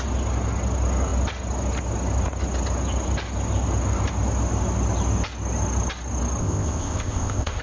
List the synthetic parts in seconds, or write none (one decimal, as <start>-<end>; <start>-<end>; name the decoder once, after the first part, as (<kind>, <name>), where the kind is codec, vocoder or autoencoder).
6.4-7.6 (codec, ZipCodec)